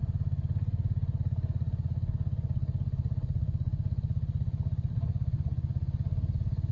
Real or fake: real